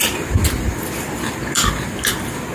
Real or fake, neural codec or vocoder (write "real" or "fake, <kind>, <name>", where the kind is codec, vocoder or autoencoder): real